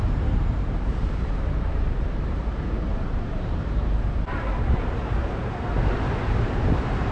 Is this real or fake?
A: fake